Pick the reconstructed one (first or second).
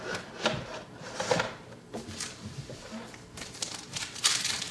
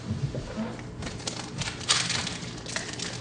first